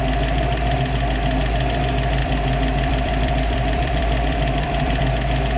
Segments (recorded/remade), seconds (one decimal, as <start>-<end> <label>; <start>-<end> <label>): 0.0-2.2 recorded; 2.2-5.0 remade; 5.0-5.6 recorded